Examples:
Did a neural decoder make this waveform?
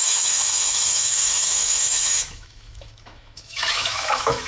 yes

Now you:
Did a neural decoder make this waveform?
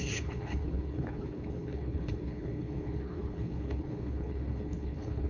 yes